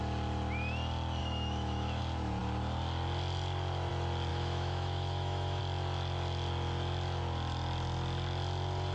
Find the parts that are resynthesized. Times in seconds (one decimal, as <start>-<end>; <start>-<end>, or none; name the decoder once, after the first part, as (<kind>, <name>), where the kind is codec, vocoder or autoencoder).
1.2-2.0 (autoencoder, DAC-VAE); 4.3-5.6

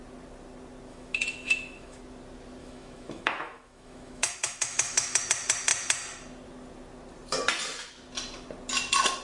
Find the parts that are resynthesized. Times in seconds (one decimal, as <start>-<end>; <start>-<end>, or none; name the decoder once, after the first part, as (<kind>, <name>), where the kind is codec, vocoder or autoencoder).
0.9-2.0 (autoencoder, DAC-VAE); 2.6-5.2

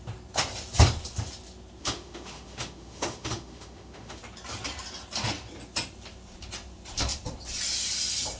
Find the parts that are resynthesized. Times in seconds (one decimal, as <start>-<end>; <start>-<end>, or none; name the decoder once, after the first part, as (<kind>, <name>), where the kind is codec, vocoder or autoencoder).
1.8-4.2 (autoencoder, DAC-VAE)

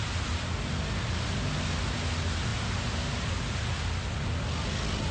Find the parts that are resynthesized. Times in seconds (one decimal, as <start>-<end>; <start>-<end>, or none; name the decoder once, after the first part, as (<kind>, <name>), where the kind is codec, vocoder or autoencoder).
none

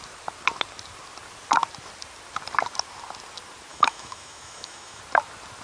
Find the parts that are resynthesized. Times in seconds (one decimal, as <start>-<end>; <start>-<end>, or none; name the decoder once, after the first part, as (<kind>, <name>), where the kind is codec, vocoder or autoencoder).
3.7-5.0 (autoencoder, DAC-VAE)

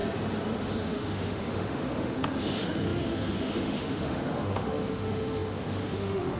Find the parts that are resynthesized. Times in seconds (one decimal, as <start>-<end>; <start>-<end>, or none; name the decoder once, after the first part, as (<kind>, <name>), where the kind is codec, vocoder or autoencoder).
0.6-6.4 (autoencoder, DAC-VAE)

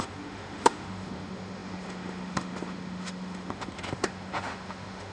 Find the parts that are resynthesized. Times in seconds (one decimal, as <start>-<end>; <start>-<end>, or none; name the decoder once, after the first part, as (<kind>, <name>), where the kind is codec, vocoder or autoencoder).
0.0-5.1 (autoencoder, DAC-VAE)

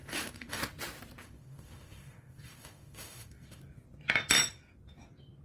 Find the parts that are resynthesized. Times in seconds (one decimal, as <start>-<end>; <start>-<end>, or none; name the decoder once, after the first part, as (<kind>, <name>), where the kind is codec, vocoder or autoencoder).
0.0-0.6 (autoencoder, DAC-VAE); 1.2-3.6